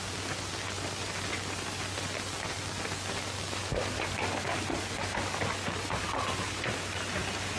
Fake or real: real